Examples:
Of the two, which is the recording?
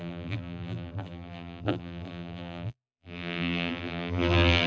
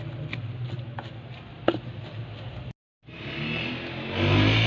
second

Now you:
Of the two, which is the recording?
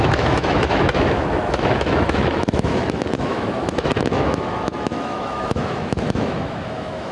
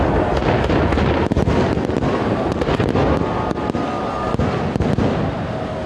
second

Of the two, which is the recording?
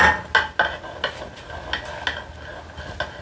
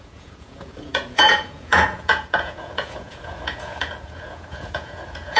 first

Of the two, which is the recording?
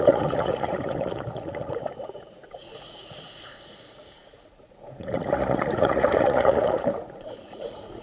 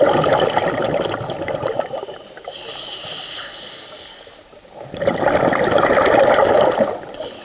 second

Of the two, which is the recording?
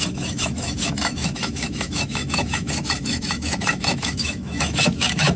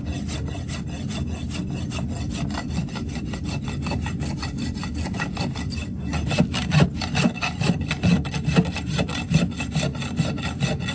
second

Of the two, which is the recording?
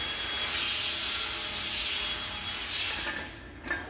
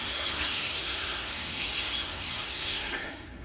first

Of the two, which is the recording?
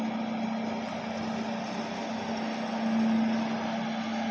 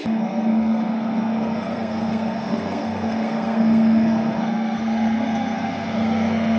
first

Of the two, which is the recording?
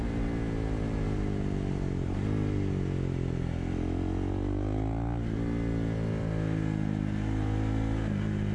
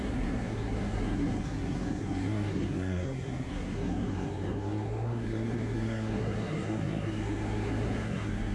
first